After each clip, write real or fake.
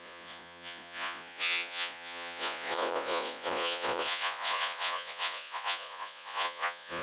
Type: fake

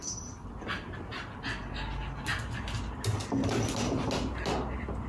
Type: real